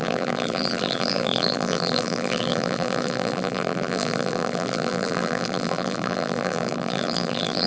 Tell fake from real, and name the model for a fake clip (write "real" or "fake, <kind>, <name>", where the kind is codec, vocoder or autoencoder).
fake, vocoder, BigVGAN v2